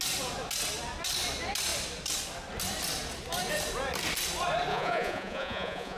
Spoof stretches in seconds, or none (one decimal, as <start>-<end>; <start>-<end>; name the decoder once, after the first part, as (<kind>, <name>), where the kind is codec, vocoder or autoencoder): 4.7-6.0 (vocoder, Vocos)